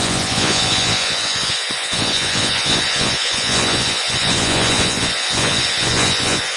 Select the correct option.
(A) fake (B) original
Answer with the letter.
A